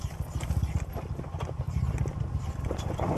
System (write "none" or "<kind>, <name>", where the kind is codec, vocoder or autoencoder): none